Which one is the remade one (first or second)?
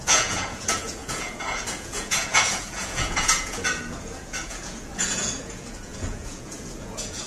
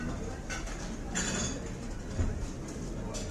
first